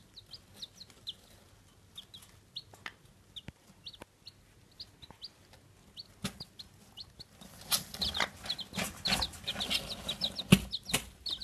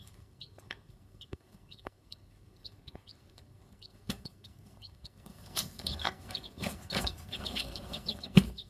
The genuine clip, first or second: first